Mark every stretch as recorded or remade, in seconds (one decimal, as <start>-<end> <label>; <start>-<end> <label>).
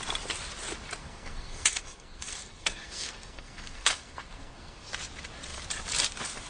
0.0-1.0 recorded; 1.0-4.9 remade; 4.9-6.5 recorded